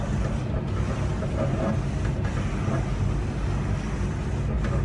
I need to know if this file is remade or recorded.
recorded